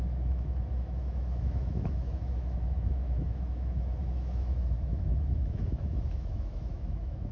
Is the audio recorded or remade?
remade